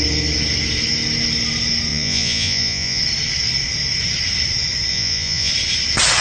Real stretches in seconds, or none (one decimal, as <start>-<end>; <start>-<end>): 0.0-1.9; 3.0-4.9; 5.5-6.2